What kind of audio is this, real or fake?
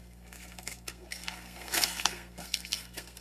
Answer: fake